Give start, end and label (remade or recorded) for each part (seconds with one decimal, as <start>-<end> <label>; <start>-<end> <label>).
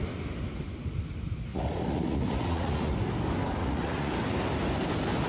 0.0-1.5 recorded; 1.5-2.9 remade; 2.9-3.6 recorded; 3.6-4.1 remade; 4.1-5.3 recorded